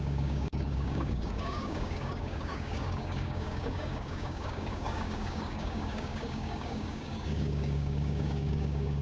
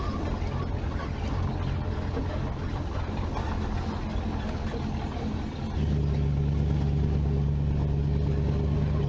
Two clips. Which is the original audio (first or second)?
second